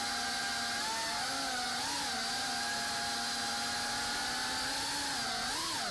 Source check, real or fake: real